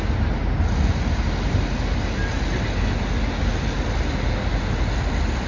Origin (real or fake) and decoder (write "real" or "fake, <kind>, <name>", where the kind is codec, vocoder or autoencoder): real